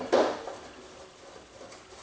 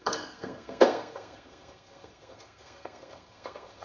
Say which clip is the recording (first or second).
first